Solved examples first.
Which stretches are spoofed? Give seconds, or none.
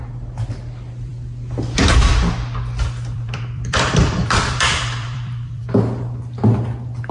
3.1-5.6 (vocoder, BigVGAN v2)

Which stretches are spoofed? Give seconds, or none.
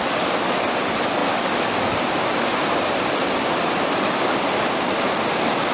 1.2-4.6 (vocoder, BigVGAN v2)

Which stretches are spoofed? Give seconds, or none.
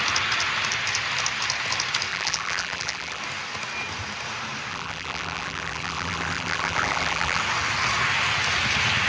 2.1-3.2 (vocoder, BigVGAN v2); 4.7-7.4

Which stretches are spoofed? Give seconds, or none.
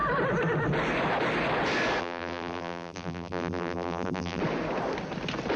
2.0-4.4 (vocoder, BigVGAN v2)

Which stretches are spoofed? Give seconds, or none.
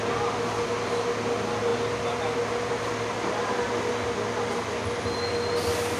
none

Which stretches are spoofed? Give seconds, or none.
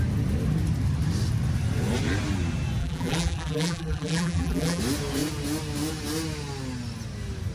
2.8-4.8 (vocoder, BigVGAN v2)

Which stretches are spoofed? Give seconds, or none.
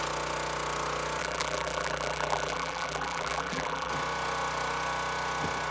1.2-3.9 (vocoder, BigVGAN v2)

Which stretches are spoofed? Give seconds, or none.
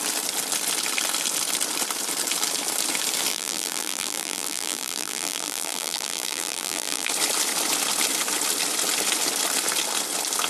3.3-7.1 (vocoder, BigVGAN v2)